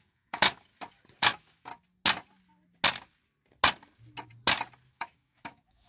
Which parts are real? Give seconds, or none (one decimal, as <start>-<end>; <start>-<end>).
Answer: 0.7-1.2; 1.7-4.9